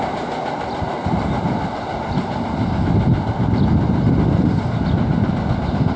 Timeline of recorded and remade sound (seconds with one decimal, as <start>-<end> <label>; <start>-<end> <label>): 0.0-6.0 recorded